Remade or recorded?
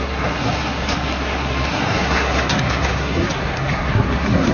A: remade